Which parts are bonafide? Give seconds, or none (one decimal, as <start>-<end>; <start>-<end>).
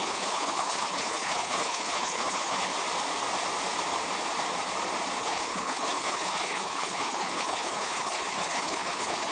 2.7-5.2